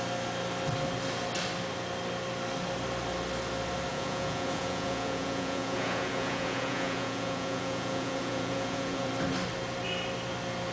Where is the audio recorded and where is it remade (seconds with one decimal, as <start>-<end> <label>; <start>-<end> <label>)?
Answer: 0.0-3.9 recorded; 3.9-9.1 remade; 9.1-10.7 recorded